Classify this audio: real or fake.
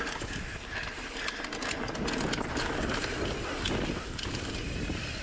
real